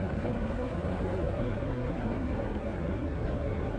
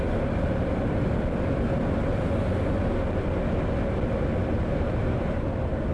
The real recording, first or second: second